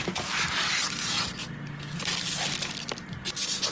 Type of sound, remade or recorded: recorded